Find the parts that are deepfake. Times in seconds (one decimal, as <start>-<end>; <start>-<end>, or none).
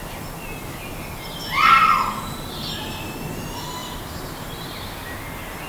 3.8-5.0